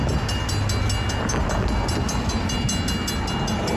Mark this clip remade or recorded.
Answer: recorded